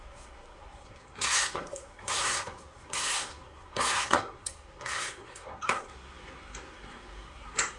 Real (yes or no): no